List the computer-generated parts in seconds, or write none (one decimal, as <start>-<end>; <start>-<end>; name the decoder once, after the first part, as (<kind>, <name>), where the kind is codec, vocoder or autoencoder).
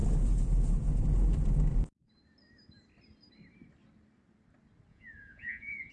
4.9-5.9 (vocoder, Vocos)